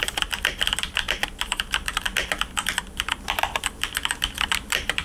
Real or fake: fake